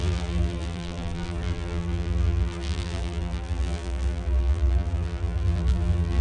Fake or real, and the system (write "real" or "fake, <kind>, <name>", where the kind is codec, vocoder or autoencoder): fake, vocoder, BigVGAN v2